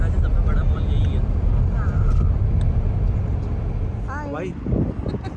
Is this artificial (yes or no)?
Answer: no